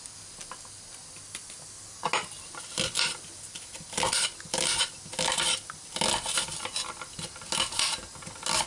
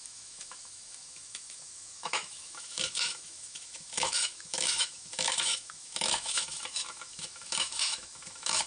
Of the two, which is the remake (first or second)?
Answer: second